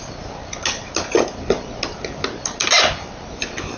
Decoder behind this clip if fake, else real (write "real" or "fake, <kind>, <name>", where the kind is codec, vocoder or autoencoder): real